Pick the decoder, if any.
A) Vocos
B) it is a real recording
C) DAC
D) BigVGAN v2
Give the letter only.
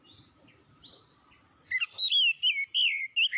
B